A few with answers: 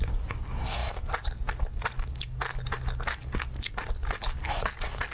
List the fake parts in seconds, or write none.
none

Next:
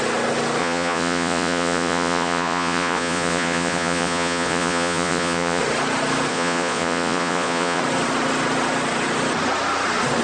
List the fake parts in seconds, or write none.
0.6-5.6; 6.3-7.8

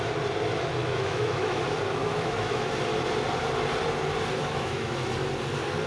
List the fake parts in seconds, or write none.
0.8-1.6; 2.0-2.7; 4.4-4.9

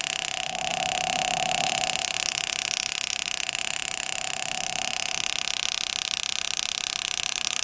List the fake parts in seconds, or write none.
none